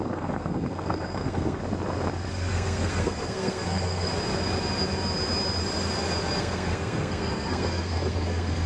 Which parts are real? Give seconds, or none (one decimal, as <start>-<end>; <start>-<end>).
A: 1.6-2.3; 4.1-6.4